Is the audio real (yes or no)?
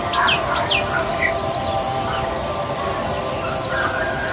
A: yes